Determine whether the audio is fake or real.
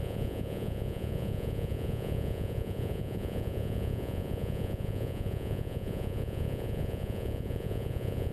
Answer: fake